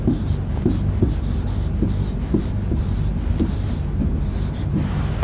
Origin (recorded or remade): recorded